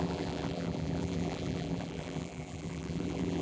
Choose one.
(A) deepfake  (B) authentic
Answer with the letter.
A